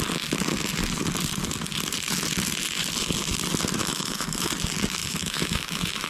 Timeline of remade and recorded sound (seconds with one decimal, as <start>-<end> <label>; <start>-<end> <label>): 0.0-3.8 recorded; 3.8-4.5 remade; 4.5-5.0 recorded; 5.0-6.1 remade

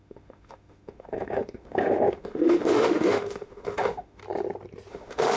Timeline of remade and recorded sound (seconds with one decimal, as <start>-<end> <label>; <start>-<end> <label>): 0.0-4.2 remade; 4.2-4.9 recorded; 4.9-5.4 remade

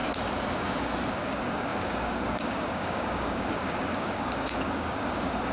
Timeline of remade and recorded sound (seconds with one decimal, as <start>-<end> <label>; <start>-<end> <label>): 0.0-1.1 recorded; 1.1-5.5 remade

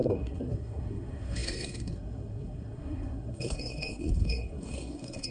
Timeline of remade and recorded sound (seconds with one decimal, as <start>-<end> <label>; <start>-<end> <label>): 0.0-5.3 remade

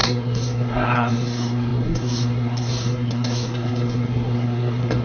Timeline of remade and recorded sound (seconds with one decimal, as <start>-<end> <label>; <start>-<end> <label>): 0.0-5.0 remade